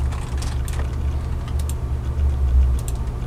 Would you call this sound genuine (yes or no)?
yes